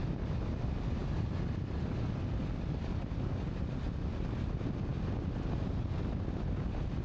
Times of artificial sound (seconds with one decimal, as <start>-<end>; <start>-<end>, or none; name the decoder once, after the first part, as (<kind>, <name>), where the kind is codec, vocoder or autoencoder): none